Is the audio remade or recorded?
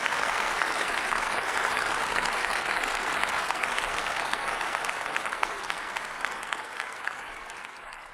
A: remade